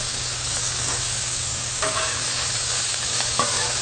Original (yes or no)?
no